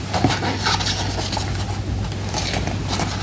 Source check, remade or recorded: recorded